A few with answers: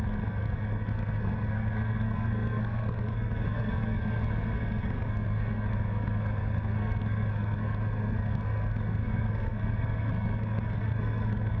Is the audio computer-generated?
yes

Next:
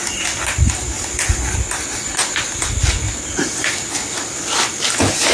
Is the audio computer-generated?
no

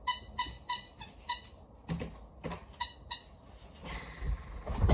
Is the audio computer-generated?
no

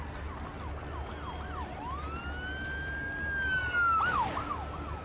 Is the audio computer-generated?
no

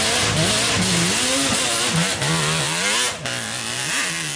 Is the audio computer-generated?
no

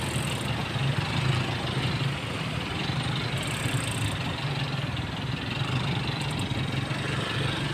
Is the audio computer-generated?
yes